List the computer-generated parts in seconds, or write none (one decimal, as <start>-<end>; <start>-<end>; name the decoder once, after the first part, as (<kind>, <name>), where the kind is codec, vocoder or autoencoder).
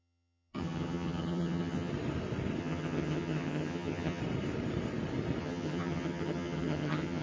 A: 0.0-1.9 (vocoder, HiFi-GAN); 2.6-4.2; 5.4-7.2